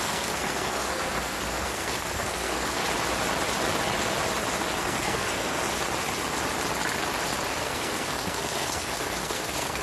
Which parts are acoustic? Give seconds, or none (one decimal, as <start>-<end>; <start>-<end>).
2.8-4.8; 5.6-7.6